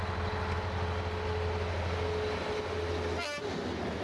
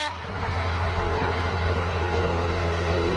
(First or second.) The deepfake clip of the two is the second